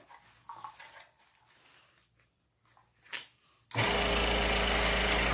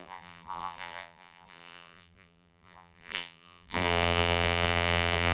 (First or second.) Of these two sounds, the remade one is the second